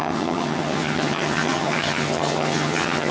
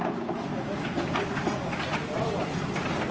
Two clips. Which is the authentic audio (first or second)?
second